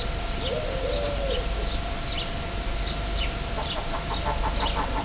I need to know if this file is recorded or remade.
recorded